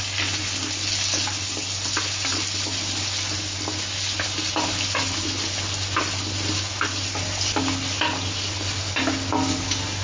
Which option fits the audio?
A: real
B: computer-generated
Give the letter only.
A